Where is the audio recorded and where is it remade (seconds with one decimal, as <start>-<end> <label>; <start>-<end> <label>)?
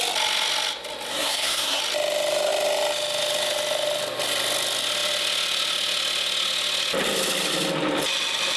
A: 0.0-1.1 recorded; 1.1-1.8 remade; 1.8-8.6 recorded